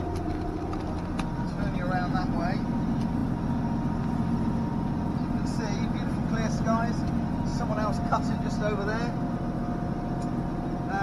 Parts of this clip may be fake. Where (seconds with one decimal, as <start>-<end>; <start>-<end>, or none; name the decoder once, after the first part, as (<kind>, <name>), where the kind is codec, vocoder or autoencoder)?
none